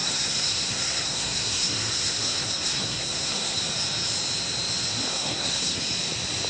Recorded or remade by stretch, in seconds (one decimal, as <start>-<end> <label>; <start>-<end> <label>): 0.0-3.6 remade; 3.6-5.1 recorded; 5.1-5.8 remade; 5.8-6.5 recorded